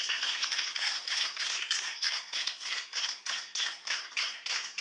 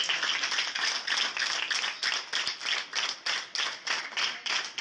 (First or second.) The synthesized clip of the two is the first